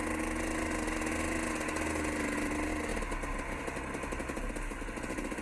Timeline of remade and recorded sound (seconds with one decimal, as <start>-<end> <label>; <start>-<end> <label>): 0.0-5.4 recorded